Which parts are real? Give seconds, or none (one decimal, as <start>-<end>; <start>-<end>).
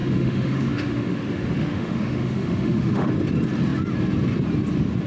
3.1-5.1